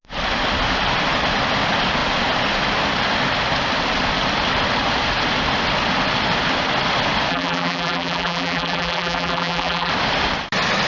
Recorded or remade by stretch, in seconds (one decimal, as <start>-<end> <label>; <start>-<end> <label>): 0.0-7.3 recorded; 7.3-9.9 remade; 9.9-10.9 recorded